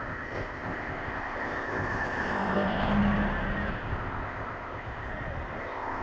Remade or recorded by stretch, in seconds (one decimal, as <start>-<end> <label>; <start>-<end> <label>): 0.0-2.9 remade; 2.9-3.7 recorded; 3.7-5.1 remade; 5.1-5.6 recorded; 5.6-6.0 remade